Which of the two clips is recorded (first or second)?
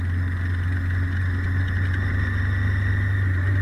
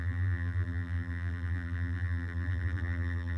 first